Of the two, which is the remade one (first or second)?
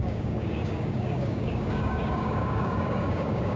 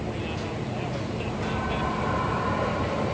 first